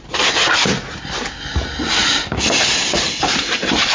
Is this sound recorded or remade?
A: remade